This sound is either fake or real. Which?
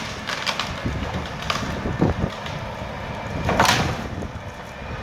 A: real